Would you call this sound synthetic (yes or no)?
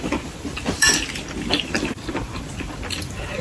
yes